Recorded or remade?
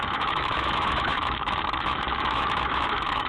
remade